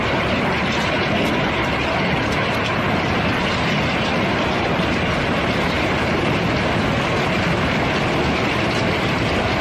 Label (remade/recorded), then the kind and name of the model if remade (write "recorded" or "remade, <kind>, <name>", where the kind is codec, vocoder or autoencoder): recorded